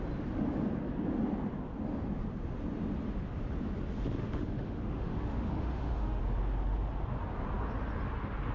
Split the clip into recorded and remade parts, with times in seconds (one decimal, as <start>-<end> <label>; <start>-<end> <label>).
0.0-4.2 recorded; 4.2-6.2 remade; 6.2-8.5 recorded